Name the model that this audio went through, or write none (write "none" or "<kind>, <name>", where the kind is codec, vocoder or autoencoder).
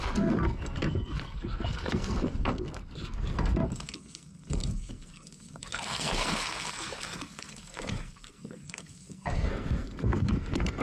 codec, SNAC